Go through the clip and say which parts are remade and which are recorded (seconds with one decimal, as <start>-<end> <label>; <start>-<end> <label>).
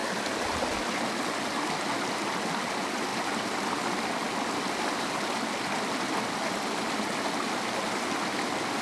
0.0-8.8 recorded